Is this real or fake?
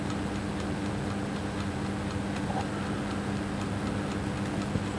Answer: real